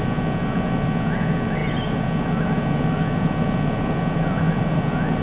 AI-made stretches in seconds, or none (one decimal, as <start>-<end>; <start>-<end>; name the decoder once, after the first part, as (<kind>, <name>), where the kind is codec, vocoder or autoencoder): none